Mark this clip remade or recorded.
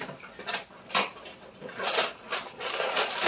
remade